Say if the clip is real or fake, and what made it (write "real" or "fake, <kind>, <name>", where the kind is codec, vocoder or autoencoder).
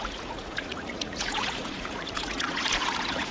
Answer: fake, vocoder, Vocos